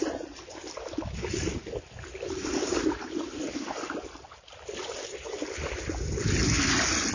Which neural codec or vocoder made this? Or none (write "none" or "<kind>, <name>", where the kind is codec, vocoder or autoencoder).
none